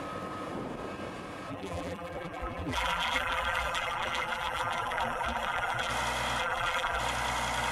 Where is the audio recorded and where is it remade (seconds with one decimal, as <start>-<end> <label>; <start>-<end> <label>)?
0.0-1.5 recorded; 1.5-5.9 remade; 5.9-6.4 recorded; 6.4-7.0 remade; 7.0-7.7 recorded